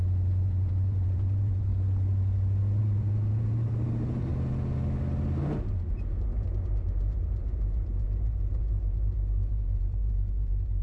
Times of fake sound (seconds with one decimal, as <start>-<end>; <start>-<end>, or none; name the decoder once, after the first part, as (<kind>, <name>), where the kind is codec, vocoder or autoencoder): 0.0-1.7 (vocoder, BigVGAN v2); 2.8-4.3; 5.9-10.8